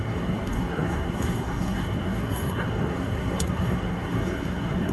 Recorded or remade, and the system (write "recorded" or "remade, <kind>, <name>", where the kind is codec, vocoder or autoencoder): remade, codec, SNAC